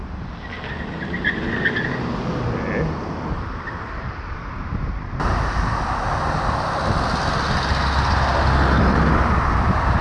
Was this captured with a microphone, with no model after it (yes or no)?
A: yes